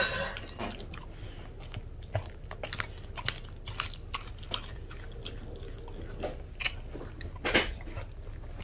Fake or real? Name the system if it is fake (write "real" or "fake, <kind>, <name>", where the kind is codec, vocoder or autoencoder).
real